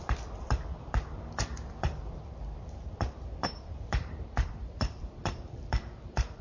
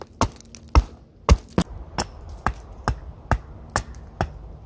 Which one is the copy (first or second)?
first